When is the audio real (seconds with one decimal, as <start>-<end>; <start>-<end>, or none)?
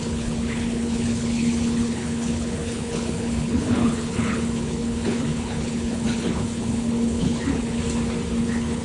7.8-8.4